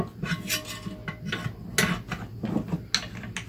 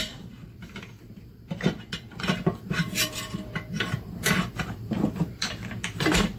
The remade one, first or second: second